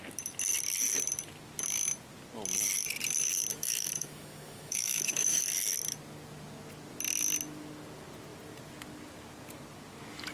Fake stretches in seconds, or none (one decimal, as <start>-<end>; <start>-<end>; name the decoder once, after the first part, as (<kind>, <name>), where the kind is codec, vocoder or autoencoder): 3.5-5.4 (autoencoder, DAC-VAE)